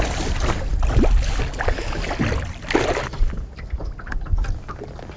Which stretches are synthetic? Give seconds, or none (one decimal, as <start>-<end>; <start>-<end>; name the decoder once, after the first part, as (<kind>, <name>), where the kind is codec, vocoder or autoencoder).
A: none